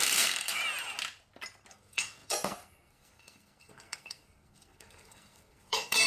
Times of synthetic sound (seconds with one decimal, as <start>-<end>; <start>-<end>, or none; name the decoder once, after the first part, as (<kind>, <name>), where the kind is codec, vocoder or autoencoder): 0.0-0.6 (codec, SNAC); 1.7-6.1